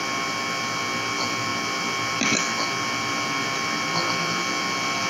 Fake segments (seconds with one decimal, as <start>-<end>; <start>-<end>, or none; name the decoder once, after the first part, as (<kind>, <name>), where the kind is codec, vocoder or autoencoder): none